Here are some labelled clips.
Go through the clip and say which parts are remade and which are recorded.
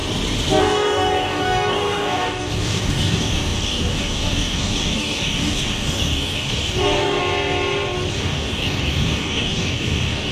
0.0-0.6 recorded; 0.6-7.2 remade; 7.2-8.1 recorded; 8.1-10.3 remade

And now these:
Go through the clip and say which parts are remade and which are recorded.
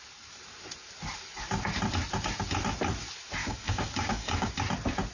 0.0-3.4 recorded; 3.4-4.5 remade; 4.5-5.1 recorded